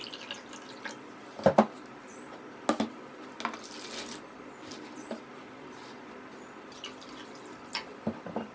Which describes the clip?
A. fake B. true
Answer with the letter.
B